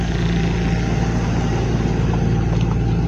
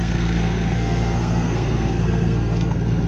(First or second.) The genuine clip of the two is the first